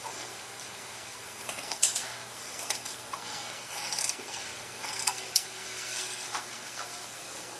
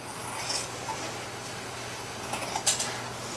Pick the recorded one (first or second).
second